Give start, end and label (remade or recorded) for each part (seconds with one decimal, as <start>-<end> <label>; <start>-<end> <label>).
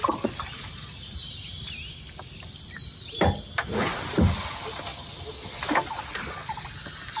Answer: 0.0-7.2 recorded